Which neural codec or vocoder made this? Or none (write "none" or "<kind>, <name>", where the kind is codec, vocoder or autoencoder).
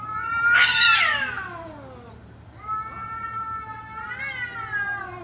none